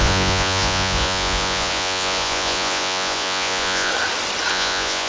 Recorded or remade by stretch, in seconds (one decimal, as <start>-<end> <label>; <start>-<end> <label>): 0.0-3.9 remade; 3.9-4.5 recorded; 4.5-5.1 remade